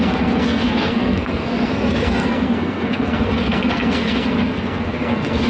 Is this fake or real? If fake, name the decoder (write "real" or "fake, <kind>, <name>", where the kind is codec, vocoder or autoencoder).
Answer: fake, codec, SNAC